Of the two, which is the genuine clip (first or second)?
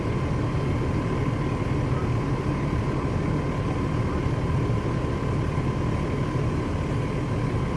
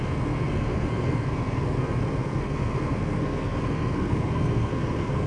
first